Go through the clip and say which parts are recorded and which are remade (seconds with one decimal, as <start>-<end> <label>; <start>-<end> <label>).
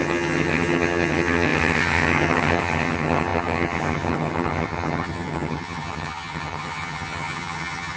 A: 0.0-8.0 remade